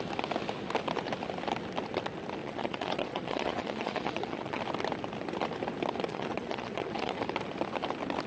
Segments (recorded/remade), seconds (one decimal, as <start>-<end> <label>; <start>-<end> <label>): 0.0-2.4 recorded; 2.4-4.6 remade; 4.6-6.1 recorded; 6.1-7.2 remade; 7.2-8.3 recorded